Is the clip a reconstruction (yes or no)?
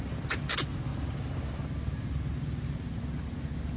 no